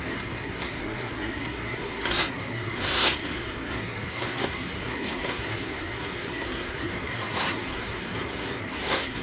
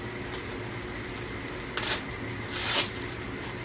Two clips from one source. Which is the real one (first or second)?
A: second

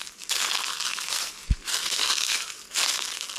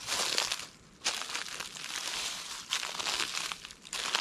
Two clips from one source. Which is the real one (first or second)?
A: second